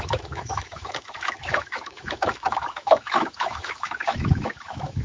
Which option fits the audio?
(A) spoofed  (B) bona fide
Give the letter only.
A